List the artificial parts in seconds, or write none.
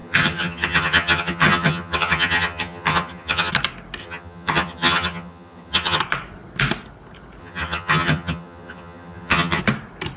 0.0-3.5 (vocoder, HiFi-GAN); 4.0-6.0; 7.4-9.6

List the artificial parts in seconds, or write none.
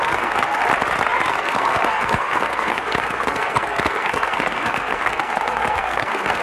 0.0-0.6 (codec, SNAC); 1.3-6.4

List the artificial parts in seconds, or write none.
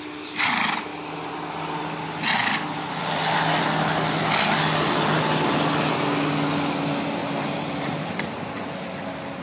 7.2-9.4 (vocoder, BigVGAN v2)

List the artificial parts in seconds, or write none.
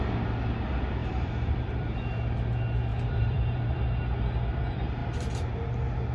1.0-1.7 (vocoder, BigVGAN v2); 2.9-3.8; 5.0-5.6